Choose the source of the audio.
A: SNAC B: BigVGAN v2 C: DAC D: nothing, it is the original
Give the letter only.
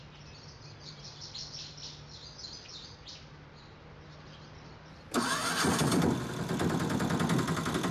D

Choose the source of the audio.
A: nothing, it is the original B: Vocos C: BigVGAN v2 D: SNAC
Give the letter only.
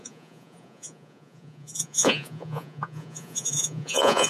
B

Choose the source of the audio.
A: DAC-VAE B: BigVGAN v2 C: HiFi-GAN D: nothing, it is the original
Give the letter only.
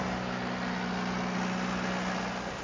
D